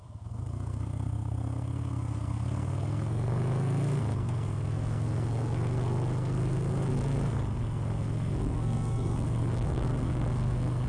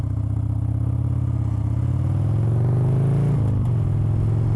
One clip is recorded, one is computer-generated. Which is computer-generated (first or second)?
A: first